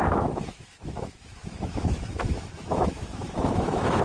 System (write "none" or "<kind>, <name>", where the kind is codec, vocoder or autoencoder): autoencoder, DAC-VAE